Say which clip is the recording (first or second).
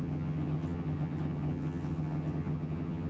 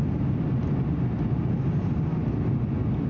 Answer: second